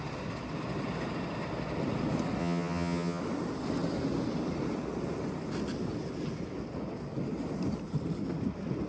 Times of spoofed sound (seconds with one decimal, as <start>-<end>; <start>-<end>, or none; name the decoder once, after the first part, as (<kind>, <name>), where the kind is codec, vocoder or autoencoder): 2.4-3.2 (vocoder, HiFi-GAN)